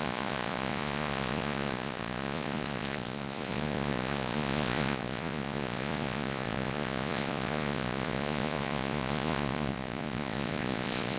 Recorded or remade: remade